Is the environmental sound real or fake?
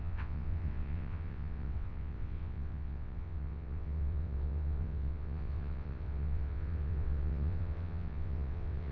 fake